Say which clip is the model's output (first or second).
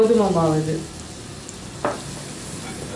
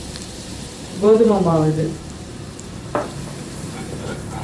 second